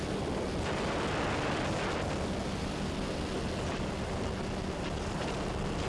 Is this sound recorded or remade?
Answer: recorded